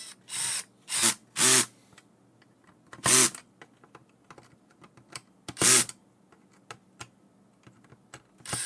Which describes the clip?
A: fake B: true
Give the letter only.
B